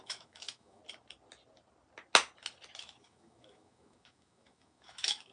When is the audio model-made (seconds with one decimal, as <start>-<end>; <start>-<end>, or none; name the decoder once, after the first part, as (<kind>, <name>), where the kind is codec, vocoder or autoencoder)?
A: 0.0-0.8 (autoencoder, DAC-VAE); 2.8-5.3